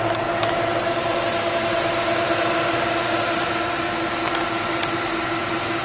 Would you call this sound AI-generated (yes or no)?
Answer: no